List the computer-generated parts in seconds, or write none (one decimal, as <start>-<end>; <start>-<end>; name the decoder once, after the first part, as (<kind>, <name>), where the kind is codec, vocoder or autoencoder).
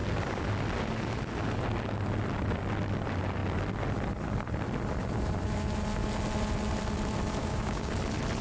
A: 7.4-7.9 (codec, DAC)